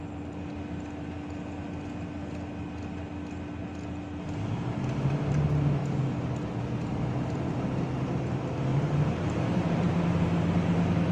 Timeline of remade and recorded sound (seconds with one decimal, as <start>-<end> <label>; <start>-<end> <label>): 0.0-8.7 recorded; 8.7-10.0 remade; 10.0-11.1 recorded